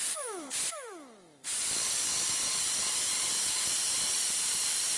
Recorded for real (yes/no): no